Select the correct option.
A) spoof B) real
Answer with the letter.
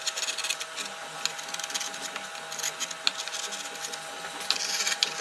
B